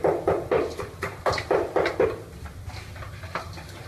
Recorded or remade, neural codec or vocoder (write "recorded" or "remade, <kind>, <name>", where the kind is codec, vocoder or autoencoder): recorded